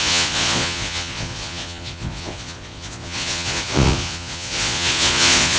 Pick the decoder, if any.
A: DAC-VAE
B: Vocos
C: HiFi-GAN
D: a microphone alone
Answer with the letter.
B